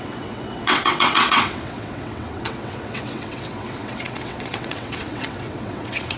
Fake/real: fake